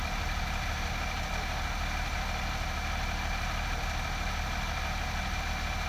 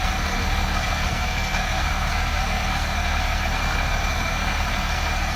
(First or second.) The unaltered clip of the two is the first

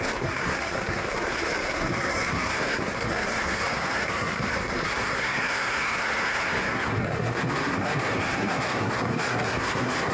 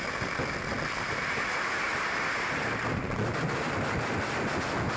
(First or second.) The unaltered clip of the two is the second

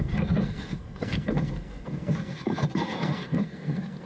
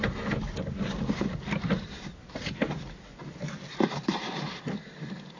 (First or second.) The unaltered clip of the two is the second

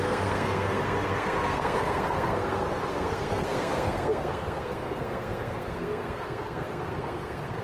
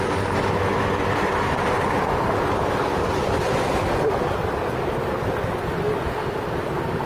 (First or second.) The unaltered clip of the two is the second